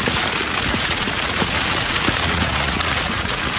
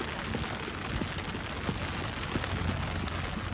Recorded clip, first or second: second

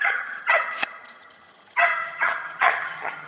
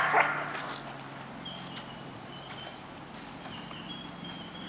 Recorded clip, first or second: second